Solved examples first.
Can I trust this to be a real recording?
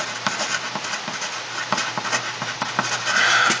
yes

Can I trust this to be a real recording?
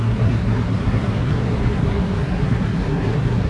no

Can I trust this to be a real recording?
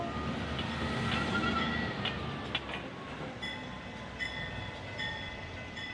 yes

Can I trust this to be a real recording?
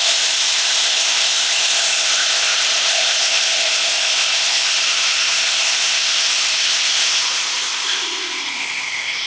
no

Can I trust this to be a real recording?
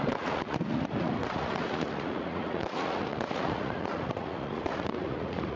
no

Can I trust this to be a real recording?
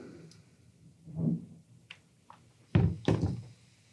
yes